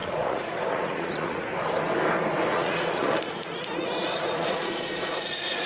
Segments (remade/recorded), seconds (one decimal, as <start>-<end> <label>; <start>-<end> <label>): 0.0-1.5 remade; 1.5-2.5 recorded; 2.5-5.7 remade